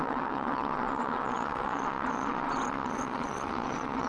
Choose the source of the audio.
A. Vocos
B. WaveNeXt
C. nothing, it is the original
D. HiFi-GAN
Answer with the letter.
B